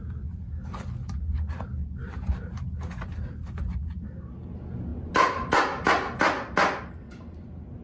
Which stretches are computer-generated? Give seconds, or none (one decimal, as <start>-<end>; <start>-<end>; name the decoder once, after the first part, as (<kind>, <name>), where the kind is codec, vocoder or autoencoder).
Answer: 1.8-2.6 (vocoder, BigVGAN v2)